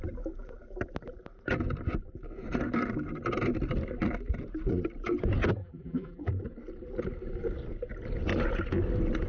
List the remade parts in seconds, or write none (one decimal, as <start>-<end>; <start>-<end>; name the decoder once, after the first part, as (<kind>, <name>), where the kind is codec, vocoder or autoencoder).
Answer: 5.6-6.3 (vocoder, BigVGAN v2)